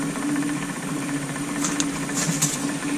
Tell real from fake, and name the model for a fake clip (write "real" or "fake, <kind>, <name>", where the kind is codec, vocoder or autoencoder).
fake, vocoder, BigVGAN v2